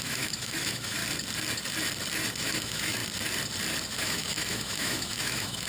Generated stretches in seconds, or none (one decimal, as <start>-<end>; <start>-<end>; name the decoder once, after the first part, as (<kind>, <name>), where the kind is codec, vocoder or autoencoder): 0.0-1.0 (autoencoder, DAC-VAE); 2.4-3.0; 4.0-5.7